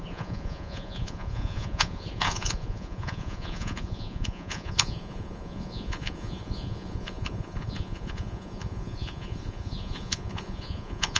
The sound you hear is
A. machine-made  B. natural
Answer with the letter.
A